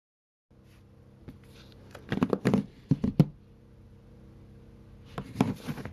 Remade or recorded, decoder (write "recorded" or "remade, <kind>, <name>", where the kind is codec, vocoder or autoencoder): recorded